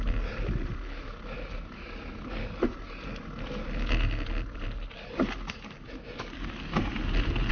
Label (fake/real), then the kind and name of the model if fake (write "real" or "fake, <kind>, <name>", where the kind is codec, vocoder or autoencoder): real